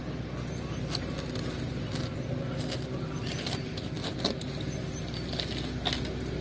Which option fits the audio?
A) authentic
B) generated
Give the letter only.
A